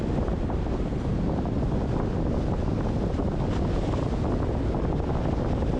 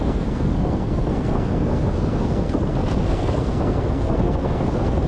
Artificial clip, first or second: second